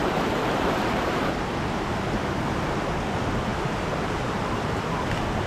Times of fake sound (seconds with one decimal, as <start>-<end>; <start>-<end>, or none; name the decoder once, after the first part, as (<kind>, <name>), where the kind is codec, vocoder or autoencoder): 0.0-1.2 (vocoder, BigVGAN v2); 3.5-5.1